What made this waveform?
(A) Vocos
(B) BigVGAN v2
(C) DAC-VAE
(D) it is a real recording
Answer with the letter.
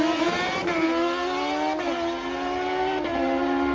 D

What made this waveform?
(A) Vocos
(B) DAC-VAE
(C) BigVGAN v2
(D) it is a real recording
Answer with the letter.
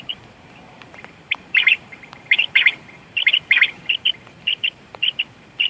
C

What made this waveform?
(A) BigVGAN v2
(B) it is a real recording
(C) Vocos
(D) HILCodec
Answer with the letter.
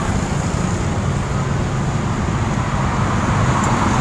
B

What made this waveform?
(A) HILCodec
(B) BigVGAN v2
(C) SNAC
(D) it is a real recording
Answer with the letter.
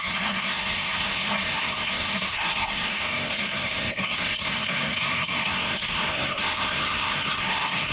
C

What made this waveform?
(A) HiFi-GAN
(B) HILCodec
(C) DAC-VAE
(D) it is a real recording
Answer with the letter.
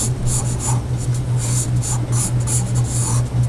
D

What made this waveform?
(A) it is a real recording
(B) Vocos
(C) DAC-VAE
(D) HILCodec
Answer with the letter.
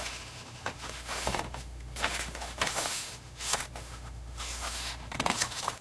C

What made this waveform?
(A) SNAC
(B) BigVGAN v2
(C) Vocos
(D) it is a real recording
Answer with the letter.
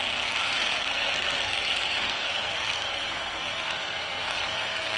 A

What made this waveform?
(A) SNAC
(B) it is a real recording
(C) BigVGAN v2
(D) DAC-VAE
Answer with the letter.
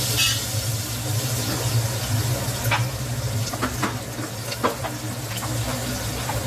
B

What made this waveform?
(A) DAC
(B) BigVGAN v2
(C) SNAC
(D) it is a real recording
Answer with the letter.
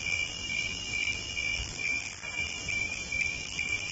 B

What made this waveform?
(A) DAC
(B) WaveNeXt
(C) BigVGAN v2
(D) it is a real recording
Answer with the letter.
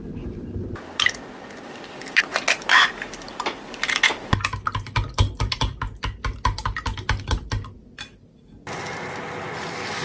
D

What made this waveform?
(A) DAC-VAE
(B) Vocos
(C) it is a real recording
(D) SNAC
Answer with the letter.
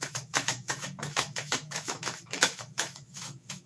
A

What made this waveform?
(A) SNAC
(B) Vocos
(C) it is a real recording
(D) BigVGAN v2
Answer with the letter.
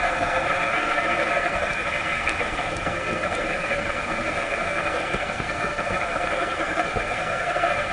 A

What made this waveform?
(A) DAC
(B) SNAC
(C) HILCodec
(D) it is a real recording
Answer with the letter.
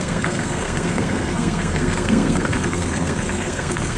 B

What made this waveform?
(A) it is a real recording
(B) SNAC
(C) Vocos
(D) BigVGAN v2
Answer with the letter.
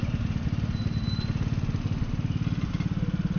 A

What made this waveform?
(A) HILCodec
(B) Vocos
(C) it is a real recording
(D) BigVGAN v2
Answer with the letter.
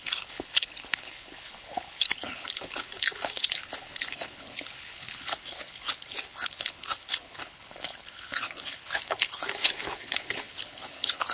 A